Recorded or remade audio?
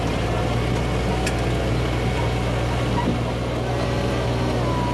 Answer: recorded